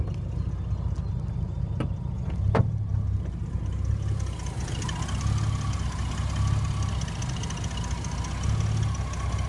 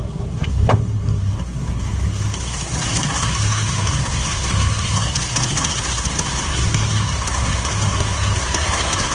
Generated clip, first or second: second